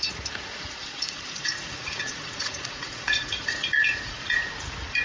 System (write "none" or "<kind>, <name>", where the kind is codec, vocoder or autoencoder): vocoder, Vocos